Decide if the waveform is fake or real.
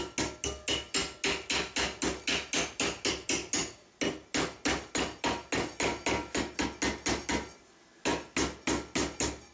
real